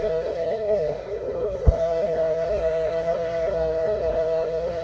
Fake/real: fake